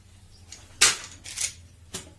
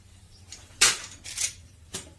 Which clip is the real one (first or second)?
first